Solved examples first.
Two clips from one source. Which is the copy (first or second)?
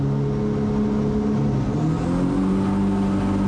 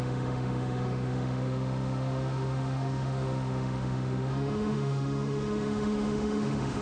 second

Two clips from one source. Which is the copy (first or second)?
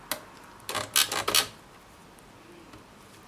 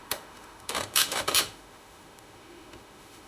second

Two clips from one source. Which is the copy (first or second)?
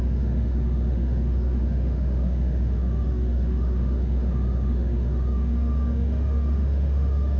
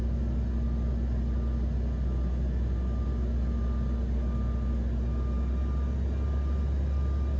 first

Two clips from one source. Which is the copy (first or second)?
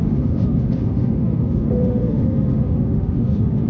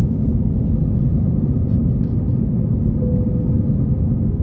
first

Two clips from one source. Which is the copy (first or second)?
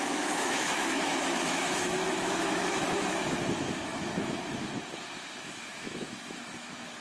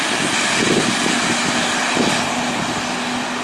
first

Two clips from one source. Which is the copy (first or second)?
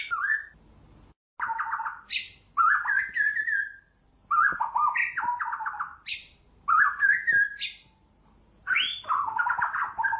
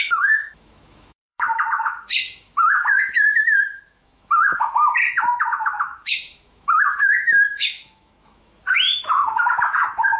second